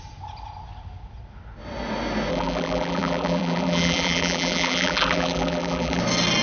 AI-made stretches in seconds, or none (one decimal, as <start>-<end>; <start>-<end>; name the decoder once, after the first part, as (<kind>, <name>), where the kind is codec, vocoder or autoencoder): 2.3-6.0 (vocoder, BigVGAN v2)